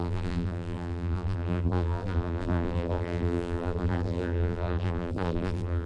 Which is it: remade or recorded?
remade